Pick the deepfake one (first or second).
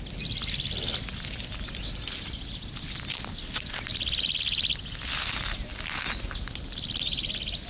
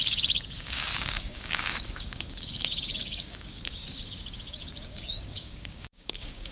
second